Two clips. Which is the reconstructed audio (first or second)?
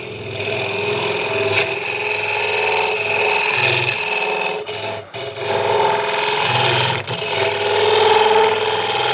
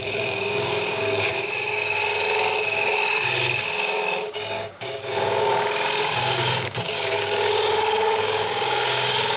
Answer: second